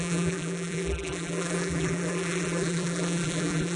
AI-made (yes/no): yes